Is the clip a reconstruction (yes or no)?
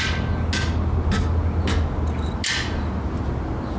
no